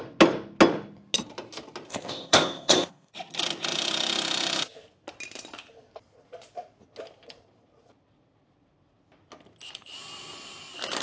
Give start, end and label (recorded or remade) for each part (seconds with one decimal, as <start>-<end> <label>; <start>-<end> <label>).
0.0-1.9 recorded; 1.9-3.1 remade; 3.1-11.0 recorded